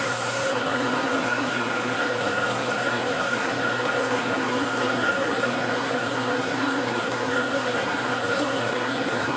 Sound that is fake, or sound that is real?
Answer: fake